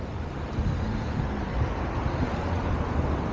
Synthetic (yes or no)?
no